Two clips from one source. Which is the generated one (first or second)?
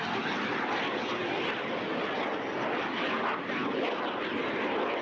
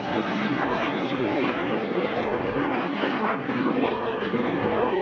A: second